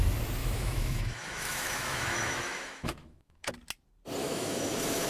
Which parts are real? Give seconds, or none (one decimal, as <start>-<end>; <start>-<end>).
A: 0.0-0.4; 3.5-4.2